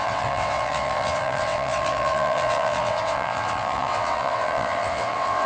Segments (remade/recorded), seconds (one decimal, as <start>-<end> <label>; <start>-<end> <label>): 0.0-5.5 remade